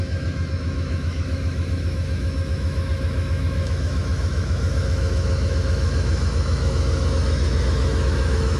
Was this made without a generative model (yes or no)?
no